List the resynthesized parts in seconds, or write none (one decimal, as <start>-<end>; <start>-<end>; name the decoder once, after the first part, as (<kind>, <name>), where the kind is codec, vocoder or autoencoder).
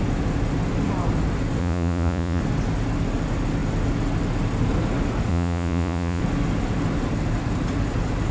1.6-2.4 (vocoder, Vocos); 5.3-6.2